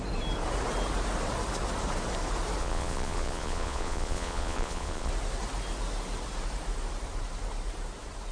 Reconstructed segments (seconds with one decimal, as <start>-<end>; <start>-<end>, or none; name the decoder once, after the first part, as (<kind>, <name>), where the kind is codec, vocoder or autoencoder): 2.6-5.1 (vocoder, Vocos)